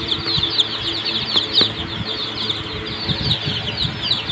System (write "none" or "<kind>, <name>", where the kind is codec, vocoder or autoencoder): none